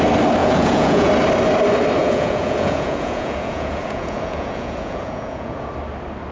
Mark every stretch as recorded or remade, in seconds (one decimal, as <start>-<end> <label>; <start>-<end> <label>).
0.0-0.4 recorded; 0.4-1.1 remade; 1.1-2.0 recorded; 2.0-5.7 remade; 5.7-6.3 recorded